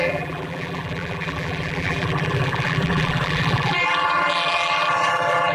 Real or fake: fake